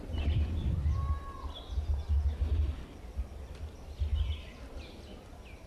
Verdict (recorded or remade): recorded